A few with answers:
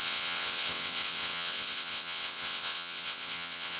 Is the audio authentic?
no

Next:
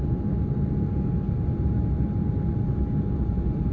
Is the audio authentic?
yes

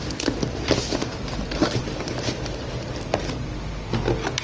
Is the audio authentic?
yes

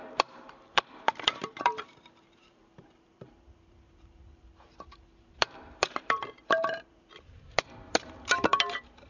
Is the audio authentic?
no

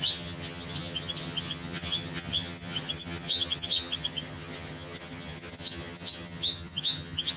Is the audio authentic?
no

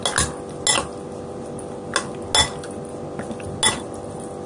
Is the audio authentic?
yes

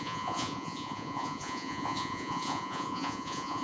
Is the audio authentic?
no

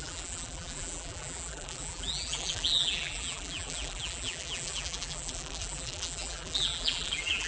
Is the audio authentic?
no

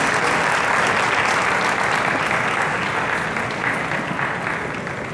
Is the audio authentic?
yes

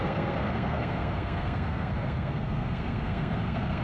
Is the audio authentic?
no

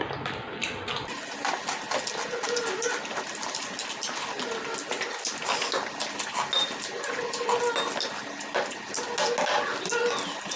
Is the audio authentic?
yes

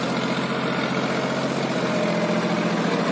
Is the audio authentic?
yes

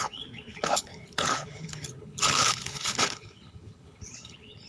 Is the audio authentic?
no